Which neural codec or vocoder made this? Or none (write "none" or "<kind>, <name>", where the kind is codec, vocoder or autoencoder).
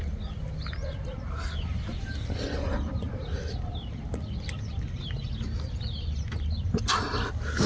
none